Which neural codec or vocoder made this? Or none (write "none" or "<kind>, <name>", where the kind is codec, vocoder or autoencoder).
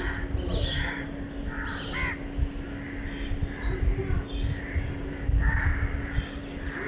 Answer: none